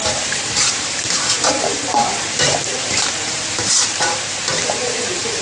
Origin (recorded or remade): remade